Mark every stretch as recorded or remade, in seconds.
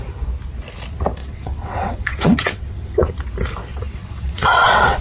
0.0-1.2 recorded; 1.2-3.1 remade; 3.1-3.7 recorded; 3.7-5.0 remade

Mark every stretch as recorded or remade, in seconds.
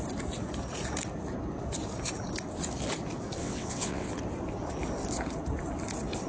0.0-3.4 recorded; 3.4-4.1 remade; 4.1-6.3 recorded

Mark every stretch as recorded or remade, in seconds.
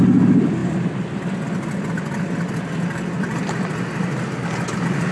0.0-5.1 recorded